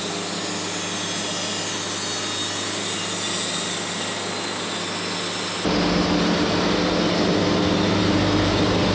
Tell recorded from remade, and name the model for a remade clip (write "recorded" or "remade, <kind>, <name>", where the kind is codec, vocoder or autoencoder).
recorded